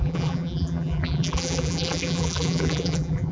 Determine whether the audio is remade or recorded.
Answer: remade